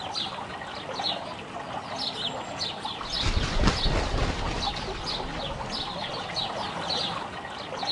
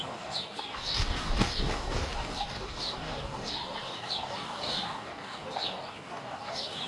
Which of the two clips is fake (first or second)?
second